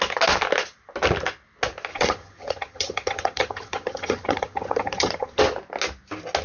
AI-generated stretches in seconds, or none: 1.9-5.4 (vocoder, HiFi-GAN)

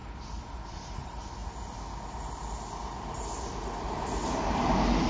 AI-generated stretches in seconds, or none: none

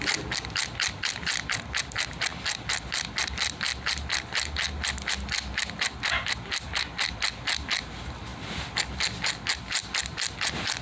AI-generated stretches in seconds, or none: none

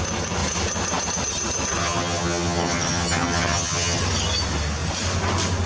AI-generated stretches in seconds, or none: 1.8-4.0 (vocoder, HiFi-GAN)

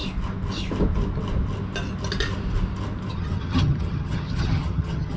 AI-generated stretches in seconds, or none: 3.1-5.2 (vocoder, HiFi-GAN)